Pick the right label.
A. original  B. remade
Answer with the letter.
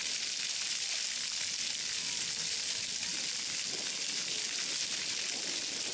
A